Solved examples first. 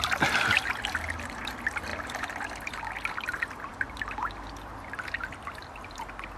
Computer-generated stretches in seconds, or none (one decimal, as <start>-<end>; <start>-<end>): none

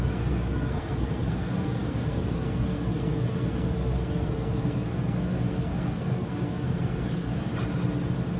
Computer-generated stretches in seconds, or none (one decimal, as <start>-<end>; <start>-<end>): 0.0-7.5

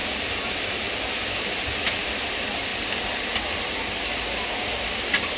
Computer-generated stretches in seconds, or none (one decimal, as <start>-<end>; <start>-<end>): none

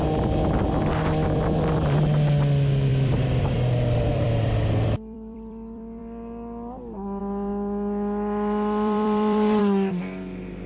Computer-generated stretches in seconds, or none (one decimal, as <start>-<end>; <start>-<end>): 2.9-6.0; 7.2-9.6